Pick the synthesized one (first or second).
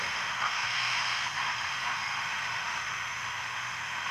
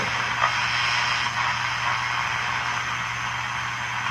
first